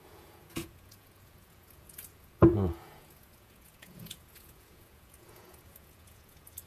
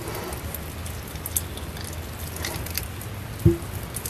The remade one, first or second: first